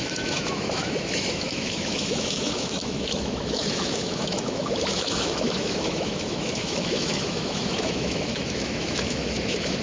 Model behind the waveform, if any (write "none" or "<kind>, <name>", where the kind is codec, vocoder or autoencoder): autoencoder, DAC-VAE